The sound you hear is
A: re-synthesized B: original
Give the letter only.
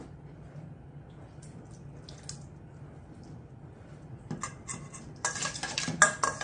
B